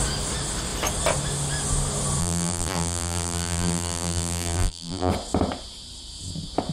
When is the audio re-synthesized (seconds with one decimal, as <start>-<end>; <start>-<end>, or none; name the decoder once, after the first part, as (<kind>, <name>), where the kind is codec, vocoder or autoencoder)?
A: 2.2-5.1 (vocoder, BigVGAN v2)